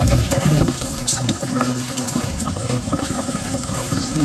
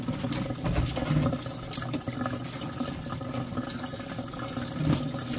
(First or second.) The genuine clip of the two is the second